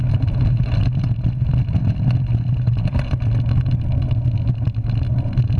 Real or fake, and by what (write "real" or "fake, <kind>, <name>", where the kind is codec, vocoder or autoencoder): real